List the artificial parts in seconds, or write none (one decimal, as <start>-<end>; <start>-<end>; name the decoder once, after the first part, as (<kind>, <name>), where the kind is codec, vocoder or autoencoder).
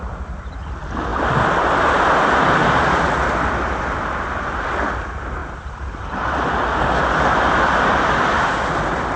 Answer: none